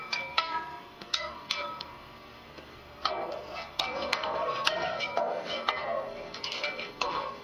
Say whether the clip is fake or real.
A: fake